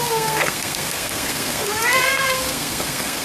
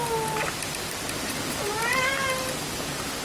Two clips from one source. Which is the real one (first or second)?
second